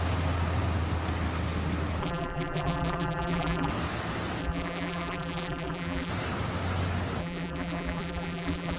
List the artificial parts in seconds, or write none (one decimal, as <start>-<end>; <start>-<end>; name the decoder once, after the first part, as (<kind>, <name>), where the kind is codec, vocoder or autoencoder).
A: 2.0-3.7 (vocoder, BigVGAN v2); 4.4-6.1; 7.2-8.8